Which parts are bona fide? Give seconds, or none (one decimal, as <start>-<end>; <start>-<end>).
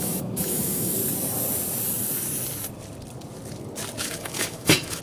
1.0-4.0